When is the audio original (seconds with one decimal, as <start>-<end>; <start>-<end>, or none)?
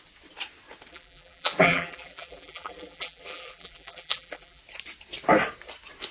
0.0-0.9; 4.6-6.1